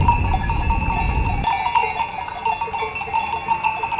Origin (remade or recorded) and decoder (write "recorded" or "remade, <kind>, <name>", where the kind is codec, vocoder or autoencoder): recorded